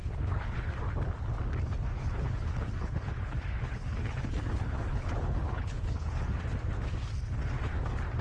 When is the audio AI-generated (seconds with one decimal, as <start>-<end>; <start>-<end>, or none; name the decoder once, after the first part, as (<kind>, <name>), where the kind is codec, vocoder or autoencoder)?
0.0-0.7 (codec, HILCodec); 1.9-6.4